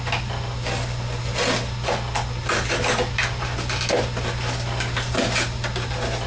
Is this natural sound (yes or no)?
yes